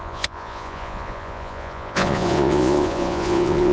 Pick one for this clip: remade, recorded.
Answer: remade